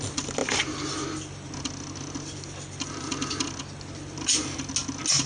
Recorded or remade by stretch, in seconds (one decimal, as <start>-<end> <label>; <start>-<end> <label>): 0.0-5.3 recorded